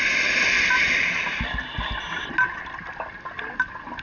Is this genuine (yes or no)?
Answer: yes